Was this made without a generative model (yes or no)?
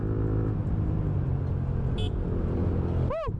yes